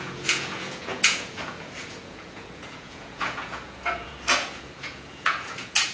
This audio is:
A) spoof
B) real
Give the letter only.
A